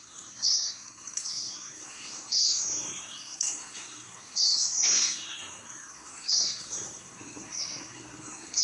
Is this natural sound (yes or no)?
no